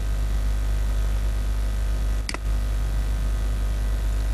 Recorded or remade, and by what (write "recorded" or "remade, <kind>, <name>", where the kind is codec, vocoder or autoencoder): recorded